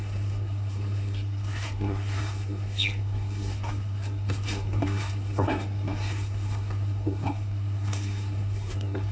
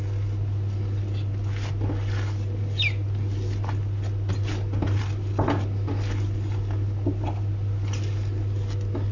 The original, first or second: second